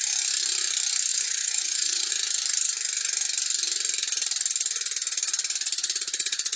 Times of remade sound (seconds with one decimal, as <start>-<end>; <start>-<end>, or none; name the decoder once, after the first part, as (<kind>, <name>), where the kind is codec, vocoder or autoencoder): 1.1-2.1 (vocoder, Vocos)